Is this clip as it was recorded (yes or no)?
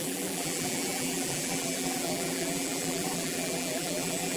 no